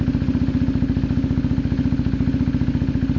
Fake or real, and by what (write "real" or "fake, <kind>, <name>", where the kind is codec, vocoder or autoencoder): real